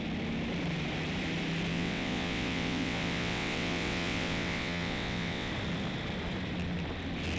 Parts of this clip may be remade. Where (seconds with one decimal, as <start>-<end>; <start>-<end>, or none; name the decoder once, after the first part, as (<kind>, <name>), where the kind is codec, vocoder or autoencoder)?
1.7-5.5 (vocoder, WaveNeXt)